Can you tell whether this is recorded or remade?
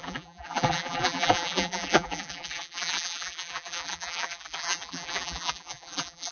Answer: remade